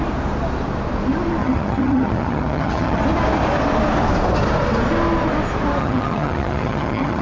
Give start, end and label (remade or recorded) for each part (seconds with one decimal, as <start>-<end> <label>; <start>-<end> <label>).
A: 0.0-1.4 recorded; 1.4-3.0 remade; 3.0-5.8 recorded; 5.8-7.2 remade